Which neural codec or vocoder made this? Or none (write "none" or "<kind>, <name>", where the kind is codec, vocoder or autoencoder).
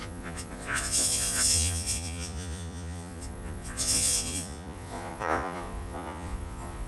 vocoder, Vocos